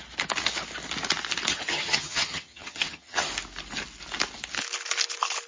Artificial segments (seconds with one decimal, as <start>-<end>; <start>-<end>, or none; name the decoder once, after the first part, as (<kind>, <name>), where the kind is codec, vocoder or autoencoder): 1.5-3.3 (vocoder, HiFi-GAN)